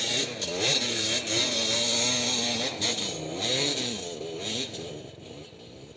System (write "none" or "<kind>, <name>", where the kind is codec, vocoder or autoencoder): none